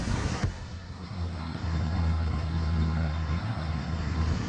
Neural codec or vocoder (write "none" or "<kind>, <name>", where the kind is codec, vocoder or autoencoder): codec, SNAC